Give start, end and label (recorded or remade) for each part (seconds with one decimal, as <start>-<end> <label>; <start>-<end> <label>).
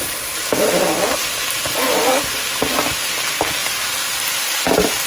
0.0-3.6 recorded; 3.6-4.2 remade; 4.2-5.1 recorded